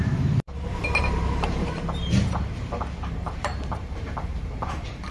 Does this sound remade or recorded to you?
remade